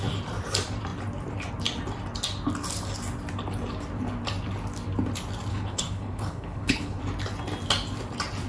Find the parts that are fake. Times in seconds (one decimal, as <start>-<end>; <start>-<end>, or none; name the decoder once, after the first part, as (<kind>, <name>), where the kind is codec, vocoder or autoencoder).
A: 5.5-7.0 (codec, HILCodec)